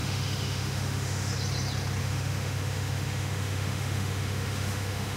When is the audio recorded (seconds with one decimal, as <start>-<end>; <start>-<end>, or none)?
1.3-2.0